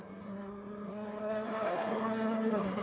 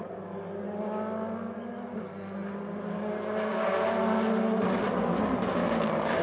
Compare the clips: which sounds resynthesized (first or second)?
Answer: first